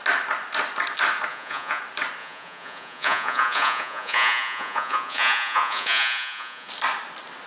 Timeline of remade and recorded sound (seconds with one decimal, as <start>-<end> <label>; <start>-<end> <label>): 0.0-1.3 recorded; 1.3-1.8 remade; 1.8-2.2 recorded; 2.2-6.7 remade; 6.7-7.5 recorded